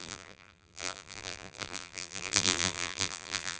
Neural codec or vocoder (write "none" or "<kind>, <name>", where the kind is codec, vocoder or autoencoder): vocoder, BigVGAN v2